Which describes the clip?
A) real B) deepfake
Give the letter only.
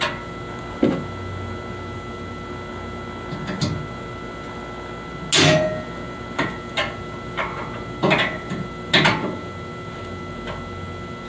A